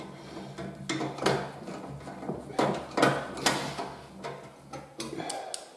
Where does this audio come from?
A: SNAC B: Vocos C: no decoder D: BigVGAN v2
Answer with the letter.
C